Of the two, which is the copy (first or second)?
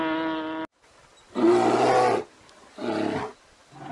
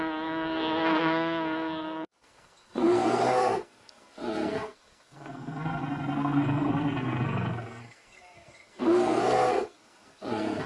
second